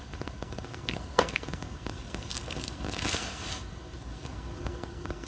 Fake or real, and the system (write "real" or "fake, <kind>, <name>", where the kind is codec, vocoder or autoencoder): fake, codec, SNAC